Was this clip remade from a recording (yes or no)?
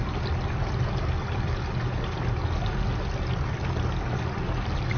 no